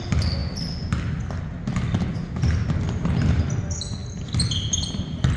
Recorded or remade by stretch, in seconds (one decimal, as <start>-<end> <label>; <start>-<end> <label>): 0.0-5.4 recorded